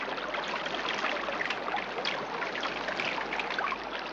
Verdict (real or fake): real